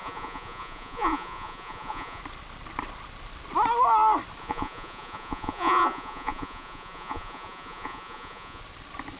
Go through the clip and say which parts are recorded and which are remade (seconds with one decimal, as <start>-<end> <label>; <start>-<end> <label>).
0.0-2.2 remade; 2.2-4.4 recorded; 4.4-8.6 remade; 8.6-9.2 recorded